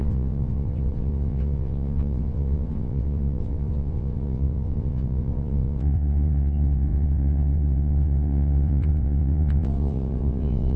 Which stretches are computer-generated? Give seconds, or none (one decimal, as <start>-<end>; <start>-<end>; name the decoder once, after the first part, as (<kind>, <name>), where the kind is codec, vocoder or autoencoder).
0.0-10.8 (vocoder, WaveNeXt)